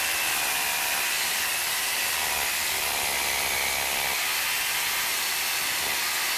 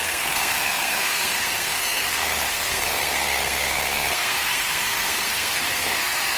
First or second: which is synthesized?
second